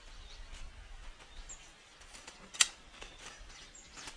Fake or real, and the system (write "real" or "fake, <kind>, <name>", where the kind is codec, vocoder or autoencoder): real